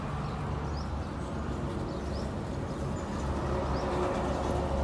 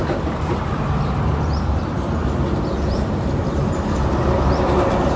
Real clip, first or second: first